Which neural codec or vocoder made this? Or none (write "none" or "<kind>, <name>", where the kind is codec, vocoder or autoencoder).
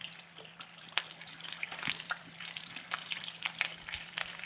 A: none